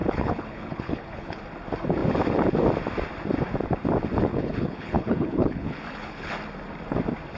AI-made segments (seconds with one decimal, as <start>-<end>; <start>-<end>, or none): 0.0-1.4; 4.3-6.3